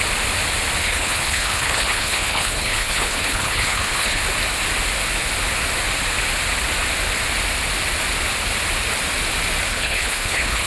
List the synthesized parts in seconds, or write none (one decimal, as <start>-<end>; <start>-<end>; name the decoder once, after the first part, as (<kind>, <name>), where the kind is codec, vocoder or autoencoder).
0.8-4.2 (codec, HILCodec); 9.7-10.7